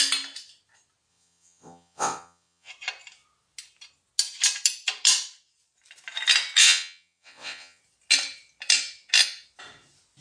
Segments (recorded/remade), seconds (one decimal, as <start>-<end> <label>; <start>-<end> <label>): 0.0-1.1 recorded; 1.1-2.7 remade; 2.7-6.6 recorded; 6.6-7.8 remade; 7.8-10.2 recorded